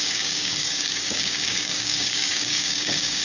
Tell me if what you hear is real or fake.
fake